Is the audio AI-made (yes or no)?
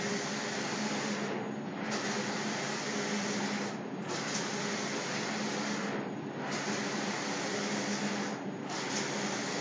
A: no